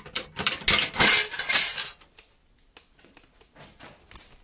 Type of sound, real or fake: real